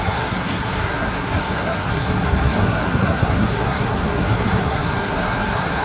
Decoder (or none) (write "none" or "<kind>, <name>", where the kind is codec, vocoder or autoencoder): codec, SNAC